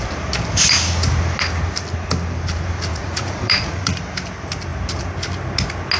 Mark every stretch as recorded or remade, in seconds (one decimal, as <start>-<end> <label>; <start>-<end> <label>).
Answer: 0.0-2.9 recorded; 2.9-4.0 remade; 4.0-6.0 recorded